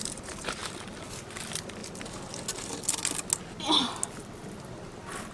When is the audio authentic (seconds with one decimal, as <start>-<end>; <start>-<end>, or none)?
0.0-5.3